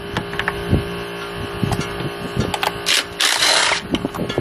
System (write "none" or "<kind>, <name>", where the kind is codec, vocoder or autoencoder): none